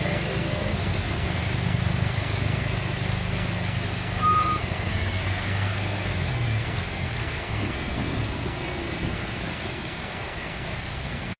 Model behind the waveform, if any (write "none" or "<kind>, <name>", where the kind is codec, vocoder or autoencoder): codec, SNAC